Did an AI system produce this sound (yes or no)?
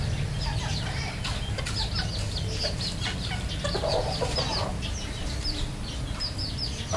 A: no